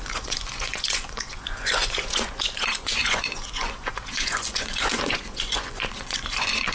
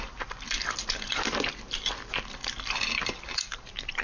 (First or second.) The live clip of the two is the second